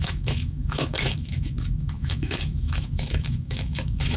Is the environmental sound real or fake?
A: fake